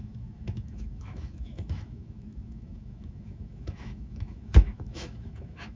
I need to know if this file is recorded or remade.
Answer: remade